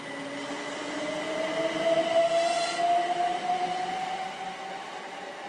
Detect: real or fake real